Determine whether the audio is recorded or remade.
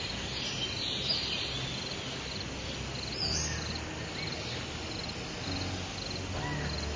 recorded